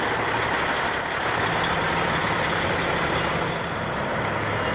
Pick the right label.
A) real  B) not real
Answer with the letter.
A